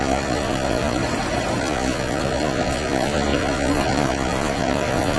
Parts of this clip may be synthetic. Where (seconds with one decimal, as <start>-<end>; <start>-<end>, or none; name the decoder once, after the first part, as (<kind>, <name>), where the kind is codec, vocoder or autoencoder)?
0.0-1.0 (vocoder, Vocos); 1.6-5.2